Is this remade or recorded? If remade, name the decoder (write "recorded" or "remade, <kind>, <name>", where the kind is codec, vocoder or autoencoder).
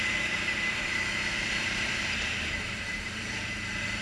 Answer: remade, vocoder, BigVGAN v2